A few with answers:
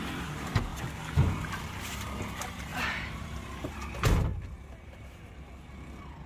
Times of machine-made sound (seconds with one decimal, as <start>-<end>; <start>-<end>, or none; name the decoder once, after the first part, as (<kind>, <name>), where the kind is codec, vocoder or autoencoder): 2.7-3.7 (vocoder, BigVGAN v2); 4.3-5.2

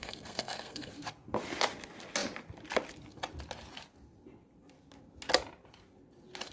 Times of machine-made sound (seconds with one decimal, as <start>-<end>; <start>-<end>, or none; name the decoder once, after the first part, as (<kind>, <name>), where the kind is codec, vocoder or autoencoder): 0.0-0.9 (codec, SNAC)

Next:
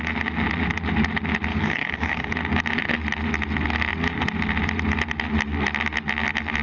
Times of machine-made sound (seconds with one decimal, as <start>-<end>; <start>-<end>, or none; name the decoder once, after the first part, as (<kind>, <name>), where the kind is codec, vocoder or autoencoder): 1.5-2.3 (codec, DAC)

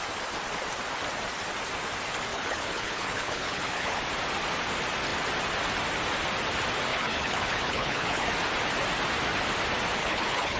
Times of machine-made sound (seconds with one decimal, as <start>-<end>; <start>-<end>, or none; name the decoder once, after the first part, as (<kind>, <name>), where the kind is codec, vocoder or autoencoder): 2.3-4.0 (codec, HILCodec); 6.9-8.3; 10.0-10.6